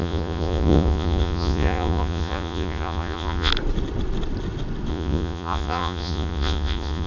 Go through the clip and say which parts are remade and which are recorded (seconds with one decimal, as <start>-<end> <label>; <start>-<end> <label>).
0.0-3.5 remade; 3.5-4.9 recorded; 4.9-7.1 remade